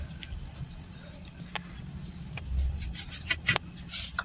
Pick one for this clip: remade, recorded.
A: recorded